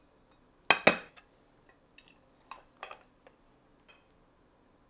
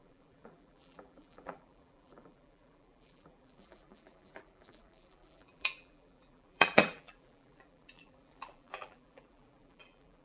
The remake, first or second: second